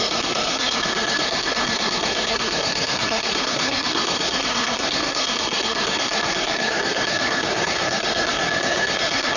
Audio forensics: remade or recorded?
remade